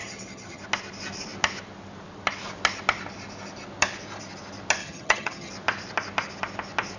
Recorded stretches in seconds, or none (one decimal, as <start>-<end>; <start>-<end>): 0.6-4.8; 5.5-7.0